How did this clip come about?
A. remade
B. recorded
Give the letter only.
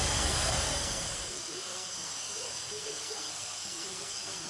A